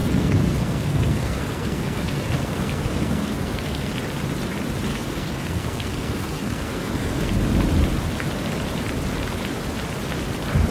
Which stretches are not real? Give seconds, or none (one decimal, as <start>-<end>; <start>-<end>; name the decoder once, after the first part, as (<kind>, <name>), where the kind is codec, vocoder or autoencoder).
0.0-3.9 (codec, SNAC); 4.9-7.3

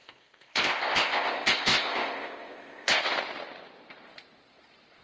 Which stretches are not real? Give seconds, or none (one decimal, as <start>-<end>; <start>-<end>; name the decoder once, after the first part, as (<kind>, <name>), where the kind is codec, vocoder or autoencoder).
0.0-3.0 (codec, ZipCodec)